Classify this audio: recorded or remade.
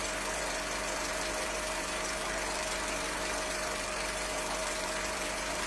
remade